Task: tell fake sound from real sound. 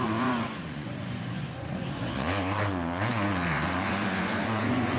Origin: fake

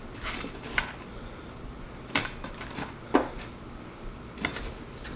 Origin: real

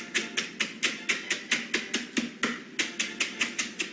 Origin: real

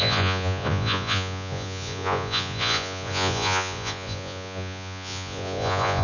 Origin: fake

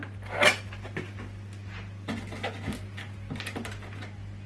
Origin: real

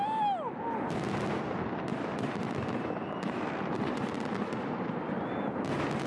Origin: real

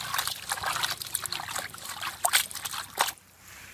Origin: real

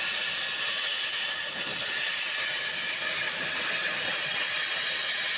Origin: real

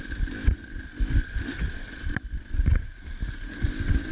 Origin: real